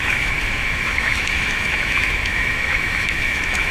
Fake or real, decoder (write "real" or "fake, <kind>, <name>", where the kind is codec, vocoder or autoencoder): fake, autoencoder, DAC-VAE